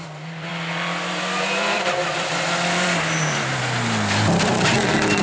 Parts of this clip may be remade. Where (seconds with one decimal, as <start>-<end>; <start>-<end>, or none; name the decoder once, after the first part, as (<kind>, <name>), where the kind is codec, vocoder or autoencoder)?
0.5-3.6 (vocoder, BigVGAN v2)